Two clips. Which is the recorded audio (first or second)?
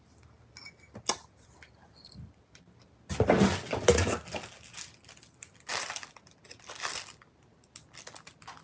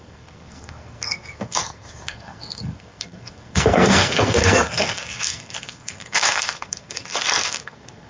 first